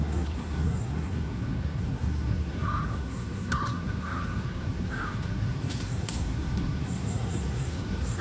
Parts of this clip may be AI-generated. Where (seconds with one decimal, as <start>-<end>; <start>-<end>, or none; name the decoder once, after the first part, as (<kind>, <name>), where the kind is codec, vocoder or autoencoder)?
0.0-8.2 (codec, SNAC)